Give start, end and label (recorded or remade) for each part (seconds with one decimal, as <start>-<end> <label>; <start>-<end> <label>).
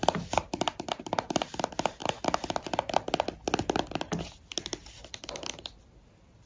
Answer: 0.0-6.5 recorded